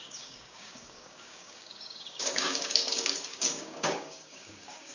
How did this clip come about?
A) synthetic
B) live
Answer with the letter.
A